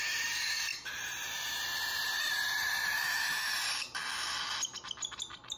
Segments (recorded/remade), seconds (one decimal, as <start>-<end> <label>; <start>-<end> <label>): 0.0-0.7 recorded; 0.7-4.0 remade; 4.0-5.6 recorded